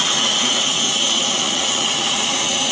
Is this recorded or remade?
remade